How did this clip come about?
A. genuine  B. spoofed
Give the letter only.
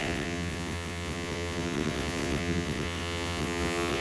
B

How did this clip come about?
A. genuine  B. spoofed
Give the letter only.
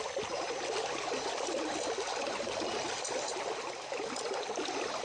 A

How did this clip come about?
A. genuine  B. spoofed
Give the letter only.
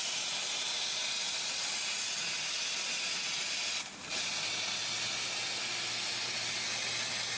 A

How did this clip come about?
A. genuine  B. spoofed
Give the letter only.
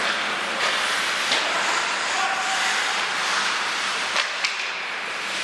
B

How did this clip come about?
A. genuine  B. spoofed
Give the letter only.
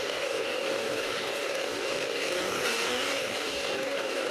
B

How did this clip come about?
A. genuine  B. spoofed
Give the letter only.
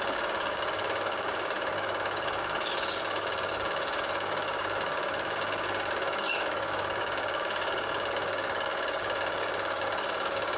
B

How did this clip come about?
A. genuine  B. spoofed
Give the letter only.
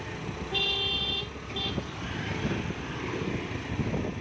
A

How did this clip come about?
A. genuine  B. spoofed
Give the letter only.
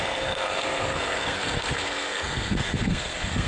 B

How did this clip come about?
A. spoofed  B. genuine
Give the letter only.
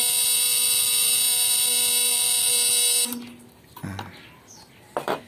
B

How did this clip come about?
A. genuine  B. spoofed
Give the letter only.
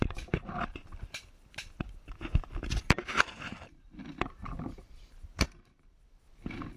B